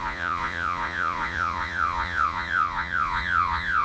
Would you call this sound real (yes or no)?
no